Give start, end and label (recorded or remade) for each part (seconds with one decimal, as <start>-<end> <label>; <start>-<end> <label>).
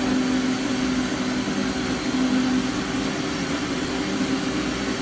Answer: 0.0-3.4 recorded; 3.4-3.9 remade; 3.9-5.0 recorded